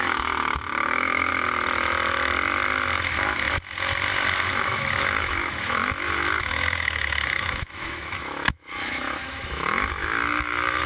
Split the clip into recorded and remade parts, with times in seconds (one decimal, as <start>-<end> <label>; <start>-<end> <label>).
0.0-1.3 remade; 1.3-4.5 recorded; 4.5-10.9 remade